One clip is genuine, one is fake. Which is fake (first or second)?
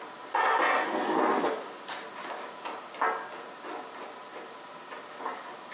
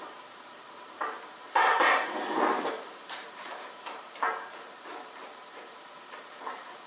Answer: second